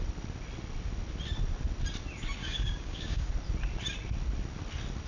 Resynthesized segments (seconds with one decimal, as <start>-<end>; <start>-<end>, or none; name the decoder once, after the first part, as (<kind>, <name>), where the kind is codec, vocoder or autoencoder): 2.4-3.3 (codec, DAC)